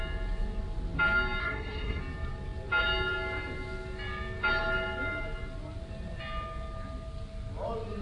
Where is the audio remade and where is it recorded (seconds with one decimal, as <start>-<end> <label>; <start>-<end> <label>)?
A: 0.0-1.4 recorded; 1.4-2.0 remade; 2.0-8.0 recorded